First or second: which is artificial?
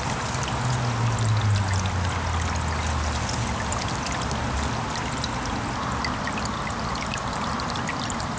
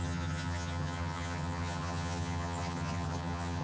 second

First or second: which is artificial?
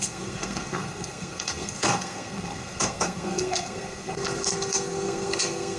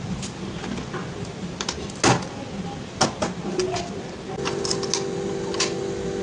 first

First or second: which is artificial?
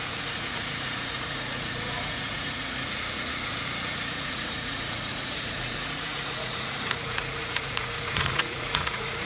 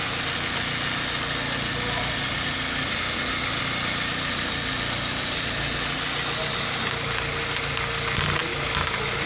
first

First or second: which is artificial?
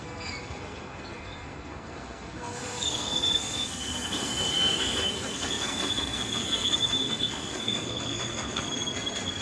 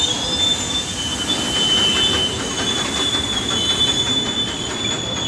first